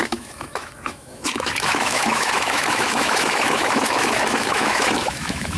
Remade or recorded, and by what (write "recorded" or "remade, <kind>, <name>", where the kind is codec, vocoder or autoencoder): remade, autoencoder, DAC-VAE